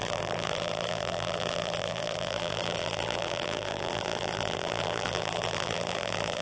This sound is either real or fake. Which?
fake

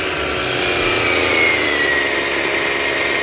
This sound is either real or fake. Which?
real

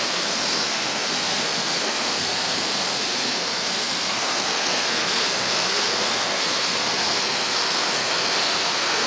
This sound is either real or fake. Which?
fake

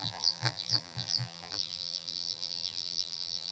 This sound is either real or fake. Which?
fake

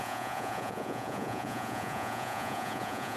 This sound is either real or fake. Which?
fake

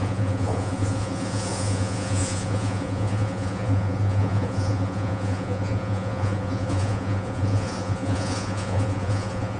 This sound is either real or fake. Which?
fake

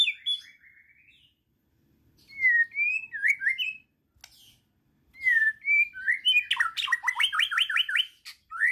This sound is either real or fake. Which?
real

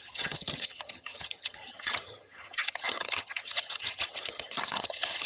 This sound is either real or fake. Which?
fake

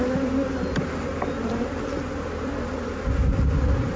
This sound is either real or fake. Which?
real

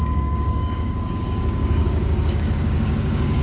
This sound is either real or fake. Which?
fake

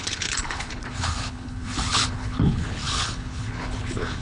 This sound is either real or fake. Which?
fake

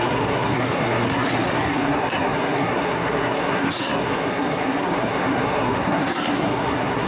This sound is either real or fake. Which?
fake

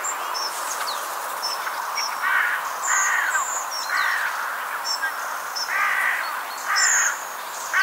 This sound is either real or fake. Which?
real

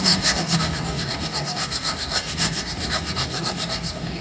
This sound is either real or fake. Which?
fake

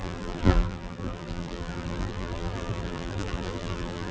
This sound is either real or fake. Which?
fake